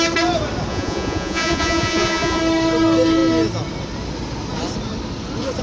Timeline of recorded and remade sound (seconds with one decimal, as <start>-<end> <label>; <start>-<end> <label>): 0.0-0.7 recorded; 0.7-2.4 remade; 2.4-5.6 recorded